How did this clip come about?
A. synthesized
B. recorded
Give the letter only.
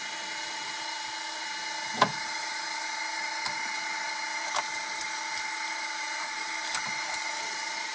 B